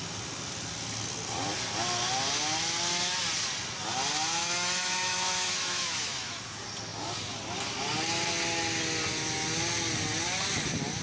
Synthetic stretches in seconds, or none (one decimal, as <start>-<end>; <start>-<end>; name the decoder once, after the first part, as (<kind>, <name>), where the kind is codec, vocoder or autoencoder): 4.4-6.4 (autoencoder, DAC-VAE)